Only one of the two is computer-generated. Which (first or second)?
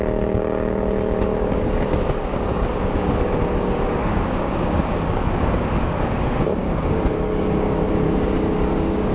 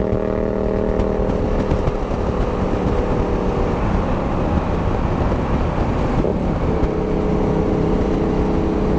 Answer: first